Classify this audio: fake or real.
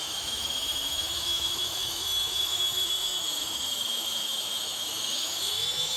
fake